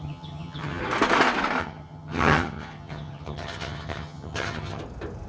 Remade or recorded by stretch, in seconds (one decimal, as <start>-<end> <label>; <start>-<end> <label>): 0.0-0.8 remade; 0.8-1.6 recorded; 1.6-4.8 remade; 4.8-5.3 recorded